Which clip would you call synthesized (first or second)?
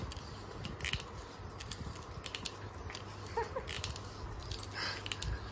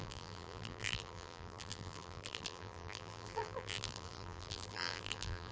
second